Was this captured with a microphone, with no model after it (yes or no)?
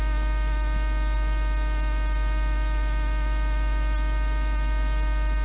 yes